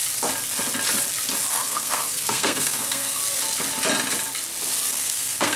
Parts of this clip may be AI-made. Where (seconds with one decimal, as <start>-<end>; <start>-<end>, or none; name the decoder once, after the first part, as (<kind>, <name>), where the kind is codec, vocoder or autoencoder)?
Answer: 1.5-3.2 (codec, SNAC); 4.9-5.6